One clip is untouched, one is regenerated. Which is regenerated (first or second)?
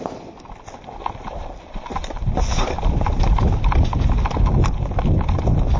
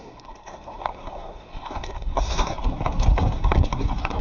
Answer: second